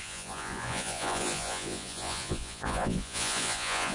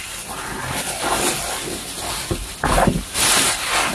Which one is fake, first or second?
first